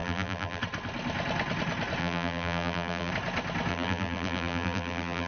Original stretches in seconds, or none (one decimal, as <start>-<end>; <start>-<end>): 0.6-2.0; 3.1-3.7